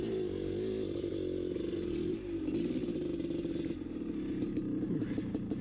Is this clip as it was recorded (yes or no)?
yes